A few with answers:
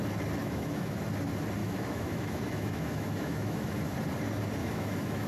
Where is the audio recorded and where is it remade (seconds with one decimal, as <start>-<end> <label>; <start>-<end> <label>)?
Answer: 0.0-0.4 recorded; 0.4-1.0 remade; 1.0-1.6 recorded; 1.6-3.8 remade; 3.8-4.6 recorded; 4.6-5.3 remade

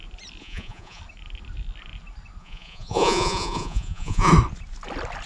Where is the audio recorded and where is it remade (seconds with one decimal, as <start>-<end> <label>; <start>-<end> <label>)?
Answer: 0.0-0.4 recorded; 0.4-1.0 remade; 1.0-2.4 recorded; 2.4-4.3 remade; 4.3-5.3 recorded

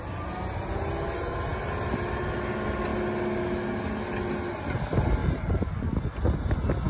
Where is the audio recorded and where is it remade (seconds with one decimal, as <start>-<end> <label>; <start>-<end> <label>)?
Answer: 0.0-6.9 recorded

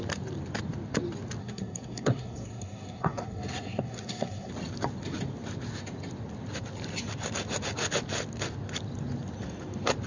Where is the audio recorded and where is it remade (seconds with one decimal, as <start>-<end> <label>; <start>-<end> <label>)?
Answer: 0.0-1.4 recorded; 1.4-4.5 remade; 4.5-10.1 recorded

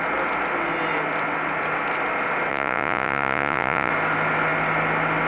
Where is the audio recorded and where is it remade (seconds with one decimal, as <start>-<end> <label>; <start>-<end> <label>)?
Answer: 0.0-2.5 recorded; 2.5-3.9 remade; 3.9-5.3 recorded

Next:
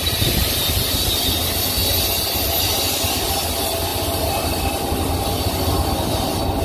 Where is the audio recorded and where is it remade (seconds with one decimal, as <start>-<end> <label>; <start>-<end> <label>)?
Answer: 0.0-3.9 recorded; 3.9-4.4 remade; 4.4-6.6 recorded